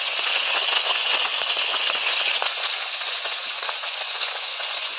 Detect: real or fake fake